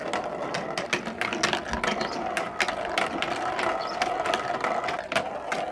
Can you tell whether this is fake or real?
real